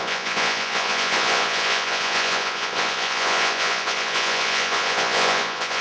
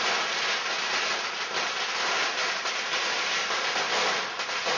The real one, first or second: second